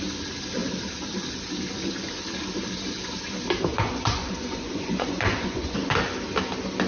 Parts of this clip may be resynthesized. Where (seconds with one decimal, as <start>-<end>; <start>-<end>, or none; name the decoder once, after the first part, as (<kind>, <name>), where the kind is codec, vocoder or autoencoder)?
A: 3.7-5.9 (vocoder, Vocos)